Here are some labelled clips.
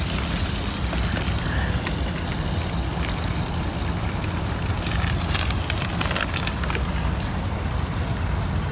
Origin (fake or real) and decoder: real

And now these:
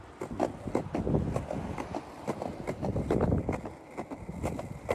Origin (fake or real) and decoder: real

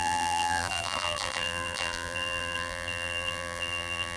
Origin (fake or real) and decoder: fake, vocoder, BigVGAN v2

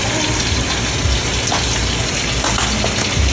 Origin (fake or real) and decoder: real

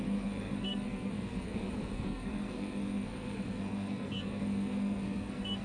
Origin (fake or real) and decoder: fake, codec, SNAC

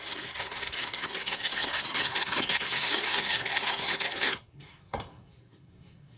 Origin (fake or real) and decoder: fake, codec, SNAC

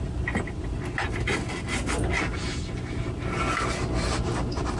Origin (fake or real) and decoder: real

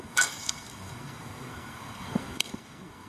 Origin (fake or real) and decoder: fake, codec, SNAC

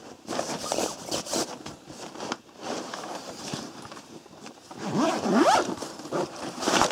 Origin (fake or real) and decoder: fake, vocoder, BigVGAN v2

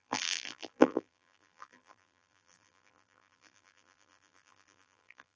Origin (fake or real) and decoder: fake, vocoder, BigVGAN v2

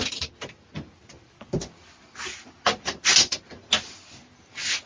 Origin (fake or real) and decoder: real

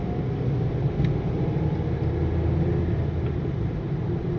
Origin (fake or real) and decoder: real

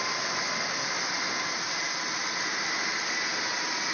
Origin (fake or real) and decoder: real